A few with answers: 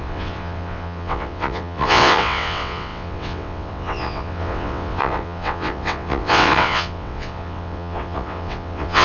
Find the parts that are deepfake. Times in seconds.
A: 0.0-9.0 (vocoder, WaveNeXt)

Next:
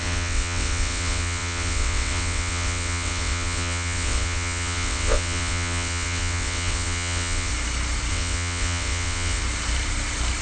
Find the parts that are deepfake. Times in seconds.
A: 0.0-7.5 (vocoder, WaveNeXt); 8.1-9.4